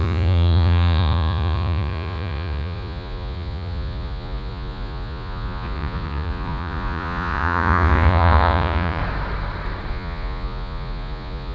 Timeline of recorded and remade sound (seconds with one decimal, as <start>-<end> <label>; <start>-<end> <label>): 0.0-9.0 remade; 9.0-9.9 recorded; 9.9-11.5 remade